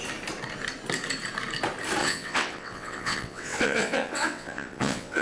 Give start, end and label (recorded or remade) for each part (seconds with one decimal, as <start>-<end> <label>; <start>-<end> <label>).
0.0-2.0 recorded; 2.0-5.2 remade